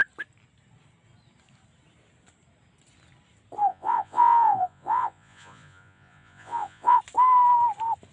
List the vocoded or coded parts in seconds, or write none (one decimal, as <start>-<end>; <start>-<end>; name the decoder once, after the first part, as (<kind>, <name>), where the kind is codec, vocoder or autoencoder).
3.7-7.0 (vocoder, Vocos)